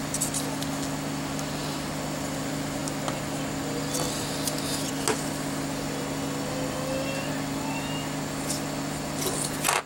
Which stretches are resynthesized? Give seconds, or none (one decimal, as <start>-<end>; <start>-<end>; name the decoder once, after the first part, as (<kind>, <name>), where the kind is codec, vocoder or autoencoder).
none

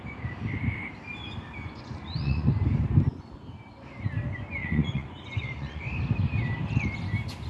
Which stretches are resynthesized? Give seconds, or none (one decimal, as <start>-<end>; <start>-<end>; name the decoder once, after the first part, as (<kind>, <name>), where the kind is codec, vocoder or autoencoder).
1.6-2.5 (vocoder, Vocos); 4.6-5.8

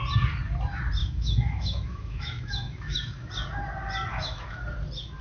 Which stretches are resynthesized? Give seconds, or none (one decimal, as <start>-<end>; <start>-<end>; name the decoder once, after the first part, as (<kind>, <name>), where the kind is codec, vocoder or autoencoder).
1.0-3.3 (autoencoder, DAC-VAE); 4.1-4.6